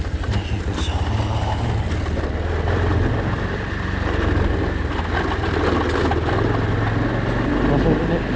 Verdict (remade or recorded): recorded